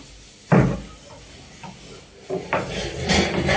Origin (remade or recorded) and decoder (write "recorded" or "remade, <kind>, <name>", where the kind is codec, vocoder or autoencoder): recorded